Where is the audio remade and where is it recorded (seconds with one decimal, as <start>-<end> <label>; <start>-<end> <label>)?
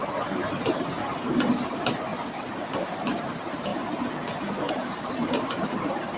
0.0-2.1 remade; 2.1-2.7 recorded; 2.7-3.7 remade; 3.7-4.7 recorded; 4.7-6.2 remade